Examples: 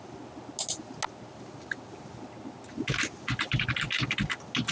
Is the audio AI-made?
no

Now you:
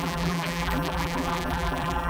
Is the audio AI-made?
yes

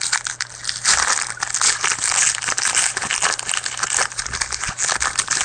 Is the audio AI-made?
no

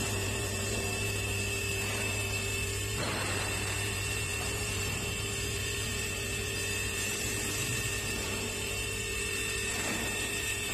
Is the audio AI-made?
yes